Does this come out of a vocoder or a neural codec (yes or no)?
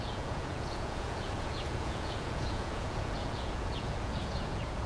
yes